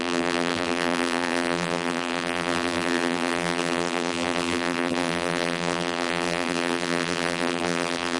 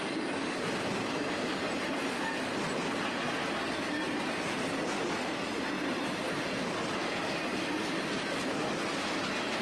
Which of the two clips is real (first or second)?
second